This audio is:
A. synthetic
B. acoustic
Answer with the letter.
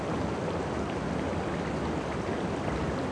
B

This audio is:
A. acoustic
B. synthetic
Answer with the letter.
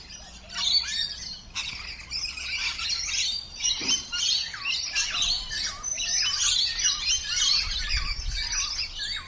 A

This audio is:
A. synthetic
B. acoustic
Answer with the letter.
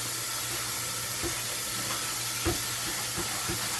B